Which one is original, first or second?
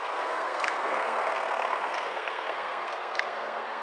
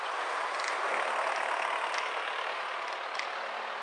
second